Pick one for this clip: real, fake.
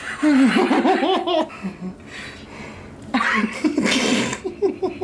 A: real